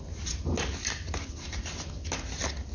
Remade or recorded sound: recorded